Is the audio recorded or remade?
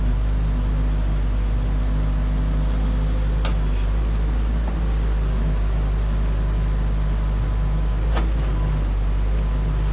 recorded